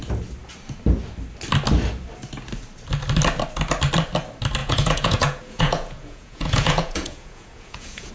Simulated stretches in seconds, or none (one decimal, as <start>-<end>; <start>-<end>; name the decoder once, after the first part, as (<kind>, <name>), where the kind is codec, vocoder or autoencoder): 4.6-8.1 (vocoder, Vocos)